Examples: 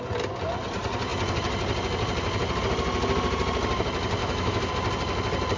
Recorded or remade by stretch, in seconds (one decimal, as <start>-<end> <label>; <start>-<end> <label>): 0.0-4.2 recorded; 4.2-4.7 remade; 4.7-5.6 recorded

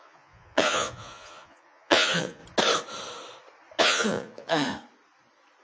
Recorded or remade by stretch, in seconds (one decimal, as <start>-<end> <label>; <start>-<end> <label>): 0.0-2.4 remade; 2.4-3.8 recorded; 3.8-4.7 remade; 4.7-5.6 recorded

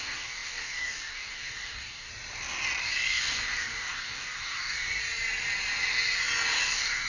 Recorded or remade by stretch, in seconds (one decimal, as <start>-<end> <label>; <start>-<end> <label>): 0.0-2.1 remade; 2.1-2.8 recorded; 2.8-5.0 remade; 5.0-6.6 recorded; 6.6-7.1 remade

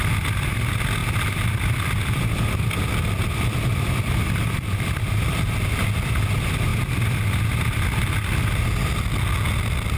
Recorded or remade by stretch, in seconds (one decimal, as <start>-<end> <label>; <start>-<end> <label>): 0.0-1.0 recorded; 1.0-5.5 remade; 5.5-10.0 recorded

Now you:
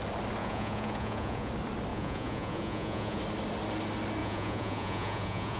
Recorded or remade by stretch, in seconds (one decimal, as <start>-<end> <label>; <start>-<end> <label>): 0.0-0.4 recorded; 0.4-1.5 remade; 1.5-1.9 recorded; 1.9-3.2 remade; 3.2-4.2 recorded; 4.2-5.6 remade

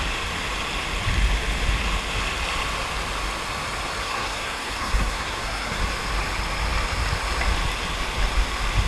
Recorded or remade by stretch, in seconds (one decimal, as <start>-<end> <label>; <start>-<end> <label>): 0.0-4.0 recorded; 4.0-5.8 remade; 5.8-8.9 recorded

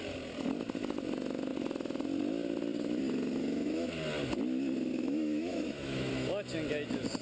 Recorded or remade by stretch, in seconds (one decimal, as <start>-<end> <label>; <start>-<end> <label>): 0.0-3.4 recorded; 3.4-3.9 remade; 3.9-4.9 recorded; 4.9-6.1 remade; 6.1-7.2 recorded

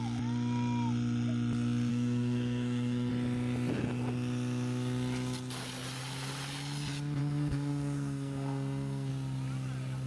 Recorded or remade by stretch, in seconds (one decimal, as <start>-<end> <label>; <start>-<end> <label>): 0.0-1.9 recorded; 1.9-3.1 remade; 3.1-7.2 recorded; 7.2-9.1 remade; 9.1-10.1 recorded